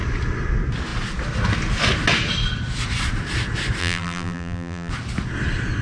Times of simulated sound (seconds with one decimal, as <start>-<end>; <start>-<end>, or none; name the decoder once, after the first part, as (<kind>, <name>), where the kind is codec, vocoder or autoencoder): 3.8-4.9 (vocoder, BigVGAN v2)